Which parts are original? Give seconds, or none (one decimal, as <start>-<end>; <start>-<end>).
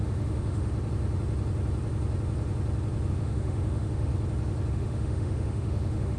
0.7-3.1; 4.1-4.7